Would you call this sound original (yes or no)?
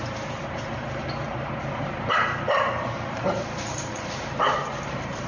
no